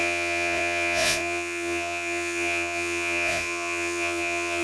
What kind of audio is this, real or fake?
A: fake